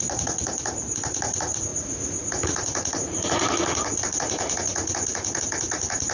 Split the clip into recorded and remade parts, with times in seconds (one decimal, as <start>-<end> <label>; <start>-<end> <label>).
0.0-0.4 remade; 0.4-1.1 recorded; 1.1-6.1 remade